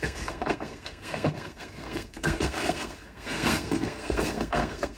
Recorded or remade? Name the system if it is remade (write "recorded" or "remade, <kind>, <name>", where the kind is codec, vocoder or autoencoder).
remade, codec, SNAC